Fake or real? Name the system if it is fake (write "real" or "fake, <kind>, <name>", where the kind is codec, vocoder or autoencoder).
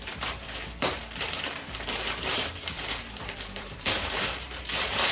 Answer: fake, vocoder, BigVGAN v2